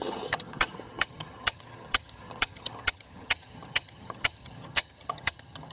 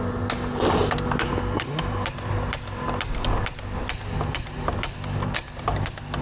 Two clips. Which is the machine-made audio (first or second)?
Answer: first